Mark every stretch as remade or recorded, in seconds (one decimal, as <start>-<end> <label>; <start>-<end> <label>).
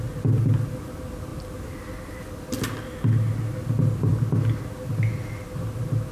0.0-6.1 recorded